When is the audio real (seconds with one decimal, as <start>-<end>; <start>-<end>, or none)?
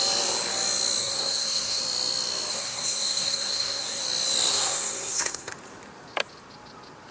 0.0-1.0; 1.8-2.5; 4.0-4.5; 5.5-7.1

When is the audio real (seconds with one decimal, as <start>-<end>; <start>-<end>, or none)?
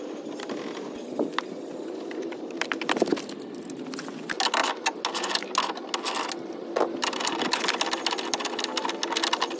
0.0-9.6